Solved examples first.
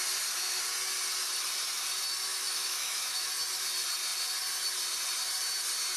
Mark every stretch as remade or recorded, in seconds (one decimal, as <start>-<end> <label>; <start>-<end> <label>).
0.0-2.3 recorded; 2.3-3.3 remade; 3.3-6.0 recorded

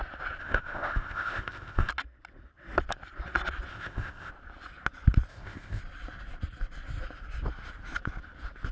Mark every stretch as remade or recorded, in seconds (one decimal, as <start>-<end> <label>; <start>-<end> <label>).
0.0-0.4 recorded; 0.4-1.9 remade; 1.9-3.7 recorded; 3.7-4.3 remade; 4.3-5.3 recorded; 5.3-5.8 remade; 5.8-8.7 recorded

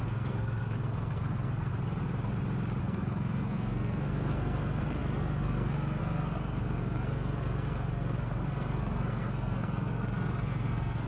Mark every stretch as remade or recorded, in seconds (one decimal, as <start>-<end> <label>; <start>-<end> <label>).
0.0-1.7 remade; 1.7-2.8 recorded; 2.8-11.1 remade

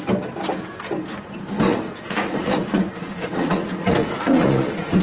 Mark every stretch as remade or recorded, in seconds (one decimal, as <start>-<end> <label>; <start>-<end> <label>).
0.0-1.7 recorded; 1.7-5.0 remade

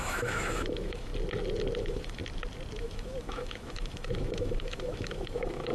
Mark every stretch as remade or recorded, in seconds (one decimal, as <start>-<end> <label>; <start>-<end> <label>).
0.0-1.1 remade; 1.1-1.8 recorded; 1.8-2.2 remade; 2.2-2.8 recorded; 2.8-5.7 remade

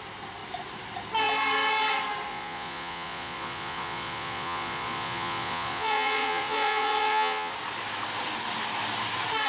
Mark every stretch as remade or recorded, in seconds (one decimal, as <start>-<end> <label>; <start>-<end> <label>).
0.0-2.3 recorded; 2.3-7.5 remade; 7.5-9.5 recorded

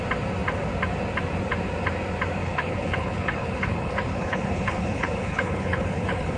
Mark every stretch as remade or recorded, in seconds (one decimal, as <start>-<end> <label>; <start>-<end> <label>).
0.0-2.4 recorded; 2.4-6.4 remade

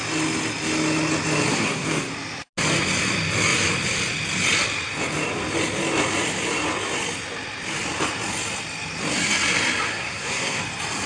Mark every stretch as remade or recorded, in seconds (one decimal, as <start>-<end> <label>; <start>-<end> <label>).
0.0-1.5 recorded; 1.5-2.1 remade; 2.1-9.9 recorded; 9.9-10.6 remade; 10.6-11.1 recorded